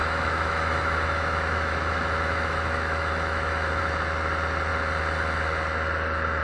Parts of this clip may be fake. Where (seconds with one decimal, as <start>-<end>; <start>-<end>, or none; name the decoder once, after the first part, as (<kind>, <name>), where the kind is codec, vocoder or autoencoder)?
0.0-3.8 (autoencoder, DAC-VAE)